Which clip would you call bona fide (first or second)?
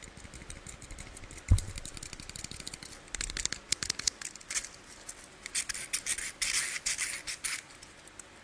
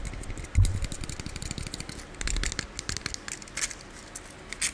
second